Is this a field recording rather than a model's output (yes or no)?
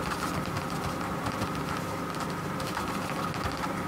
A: yes